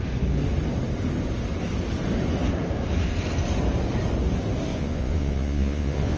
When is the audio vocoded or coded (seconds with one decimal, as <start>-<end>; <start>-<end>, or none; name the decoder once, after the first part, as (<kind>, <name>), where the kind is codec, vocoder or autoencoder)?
4.7-6.2 (vocoder, Vocos)